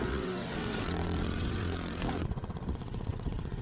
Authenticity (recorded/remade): remade